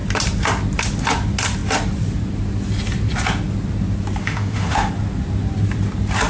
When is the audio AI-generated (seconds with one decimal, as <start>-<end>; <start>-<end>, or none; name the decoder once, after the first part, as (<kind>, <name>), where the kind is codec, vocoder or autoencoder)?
4.2-4.9 (autoencoder, DAC-VAE)